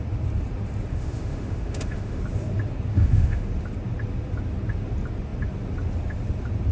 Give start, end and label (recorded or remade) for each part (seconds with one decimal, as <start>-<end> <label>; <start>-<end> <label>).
0.0-0.9 recorded; 0.9-2.2 remade; 2.2-2.9 recorded; 2.9-3.5 remade; 3.5-6.7 recorded